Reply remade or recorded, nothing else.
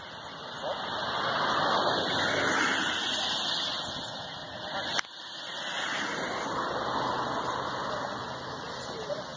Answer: recorded